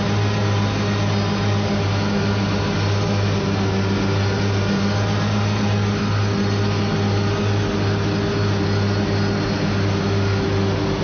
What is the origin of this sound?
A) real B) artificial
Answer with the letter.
A